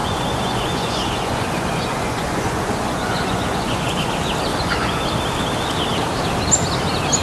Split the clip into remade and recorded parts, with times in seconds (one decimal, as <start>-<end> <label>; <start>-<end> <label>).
0.0-4.1 remade; 4.1-4.5 recorded; 4.5-5.0 remade; 5.0-7.2 recorded